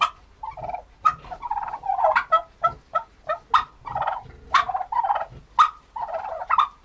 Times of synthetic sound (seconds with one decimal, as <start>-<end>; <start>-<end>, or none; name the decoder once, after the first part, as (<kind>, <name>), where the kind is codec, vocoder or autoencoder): none